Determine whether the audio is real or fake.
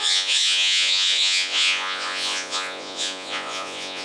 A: fake